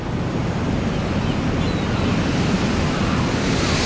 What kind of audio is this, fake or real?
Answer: real